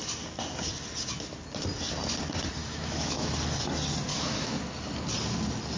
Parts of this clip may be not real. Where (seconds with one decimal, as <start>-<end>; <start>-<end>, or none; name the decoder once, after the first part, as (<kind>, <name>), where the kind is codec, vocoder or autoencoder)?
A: 2.6-3.3 (autoencoder, DAC-VAE); 4.1-4.6